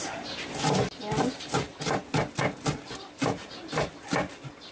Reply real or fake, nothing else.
real